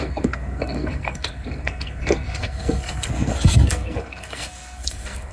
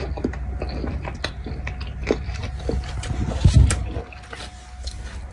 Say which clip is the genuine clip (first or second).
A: second